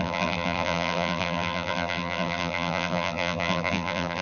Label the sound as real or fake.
fake